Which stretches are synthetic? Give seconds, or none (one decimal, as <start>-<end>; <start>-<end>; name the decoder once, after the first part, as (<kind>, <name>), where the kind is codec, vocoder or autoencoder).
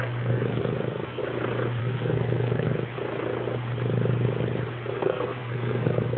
0.0-1.2 (codec, SNAC); 1.8-2.7; 4.9-6.2